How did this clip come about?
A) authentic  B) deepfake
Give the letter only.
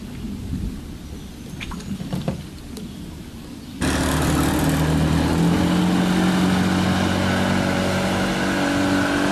A